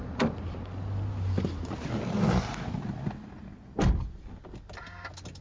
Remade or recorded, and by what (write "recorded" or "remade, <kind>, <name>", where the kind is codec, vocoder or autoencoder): recorded